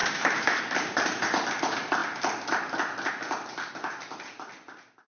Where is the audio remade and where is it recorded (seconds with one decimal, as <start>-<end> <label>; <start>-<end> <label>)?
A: 0.0-0.6 remade; 0.6-5.1 recorded